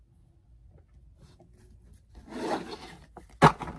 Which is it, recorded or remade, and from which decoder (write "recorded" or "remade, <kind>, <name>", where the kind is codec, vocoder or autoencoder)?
recorded